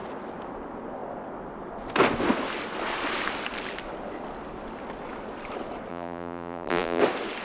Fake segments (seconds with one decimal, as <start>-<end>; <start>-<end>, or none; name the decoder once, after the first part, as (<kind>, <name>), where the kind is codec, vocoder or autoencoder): 5.9-7.0 (vocoder, BigVGAN v2)